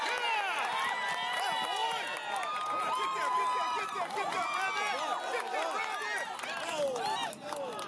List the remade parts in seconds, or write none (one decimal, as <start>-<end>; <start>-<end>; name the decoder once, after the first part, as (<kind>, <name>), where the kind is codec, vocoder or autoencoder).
none

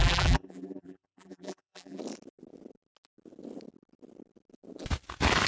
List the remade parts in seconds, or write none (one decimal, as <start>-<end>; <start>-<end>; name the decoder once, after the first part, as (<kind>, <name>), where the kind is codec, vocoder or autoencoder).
0.0-2.0 (vocoder, BigVGAN v2)

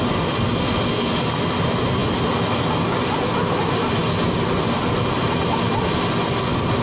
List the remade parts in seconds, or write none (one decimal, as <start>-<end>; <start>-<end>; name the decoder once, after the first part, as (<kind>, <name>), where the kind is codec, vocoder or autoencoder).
none

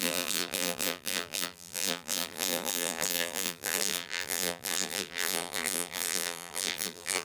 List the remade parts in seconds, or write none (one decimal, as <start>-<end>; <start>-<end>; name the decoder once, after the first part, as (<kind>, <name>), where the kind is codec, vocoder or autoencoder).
0.0-7.2 (vocoder, BigVGAN v2)